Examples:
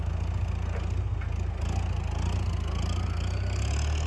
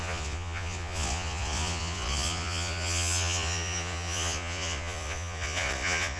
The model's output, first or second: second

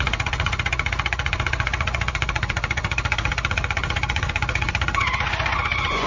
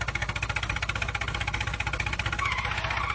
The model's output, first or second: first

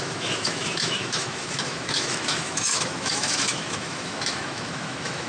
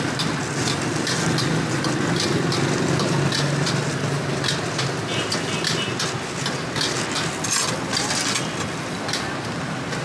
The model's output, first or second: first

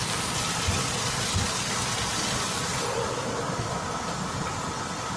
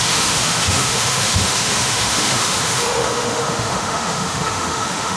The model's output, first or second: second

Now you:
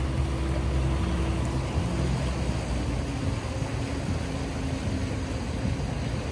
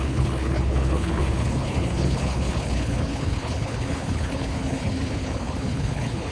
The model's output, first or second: second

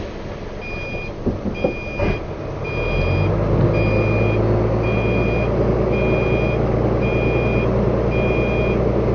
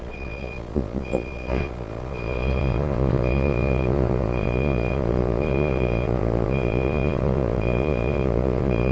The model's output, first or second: second